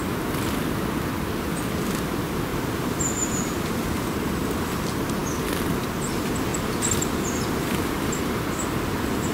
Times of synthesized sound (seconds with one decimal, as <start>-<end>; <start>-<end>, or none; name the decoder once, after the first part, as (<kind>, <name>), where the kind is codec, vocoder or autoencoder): 2.5-4.0 (vocoder, BigVGAN v2); 6.5-8.2